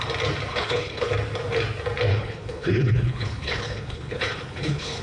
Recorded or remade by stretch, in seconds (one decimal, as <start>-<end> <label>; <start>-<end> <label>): 0.0-0.5 recorded; 0.5-1.1 remade; 1.1-2.1 recorded; 2.1-5.0 remade